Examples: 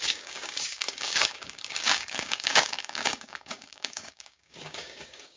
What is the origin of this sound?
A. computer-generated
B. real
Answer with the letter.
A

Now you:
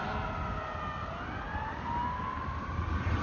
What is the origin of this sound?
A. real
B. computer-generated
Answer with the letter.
A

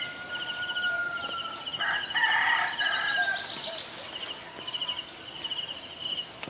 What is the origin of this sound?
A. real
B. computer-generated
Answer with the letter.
A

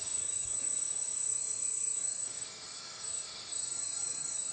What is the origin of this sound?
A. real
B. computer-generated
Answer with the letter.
B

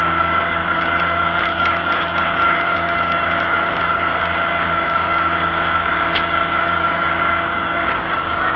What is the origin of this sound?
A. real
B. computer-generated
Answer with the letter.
B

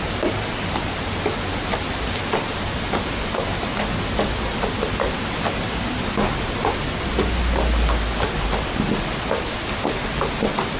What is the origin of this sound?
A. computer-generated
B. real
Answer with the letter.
B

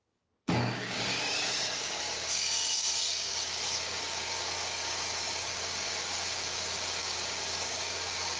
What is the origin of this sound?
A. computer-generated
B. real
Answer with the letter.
A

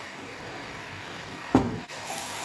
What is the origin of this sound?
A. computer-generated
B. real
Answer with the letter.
A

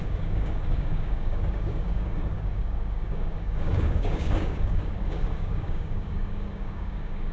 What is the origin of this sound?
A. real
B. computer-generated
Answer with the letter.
B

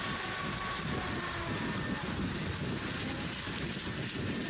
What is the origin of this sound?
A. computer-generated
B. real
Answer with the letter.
B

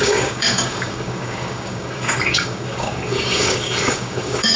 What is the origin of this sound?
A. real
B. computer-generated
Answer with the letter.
B